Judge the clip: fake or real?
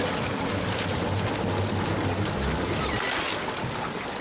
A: real